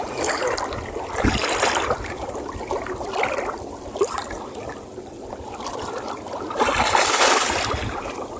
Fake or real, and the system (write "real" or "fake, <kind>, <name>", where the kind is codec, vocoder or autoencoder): real